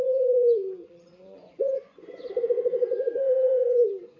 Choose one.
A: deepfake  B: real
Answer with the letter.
A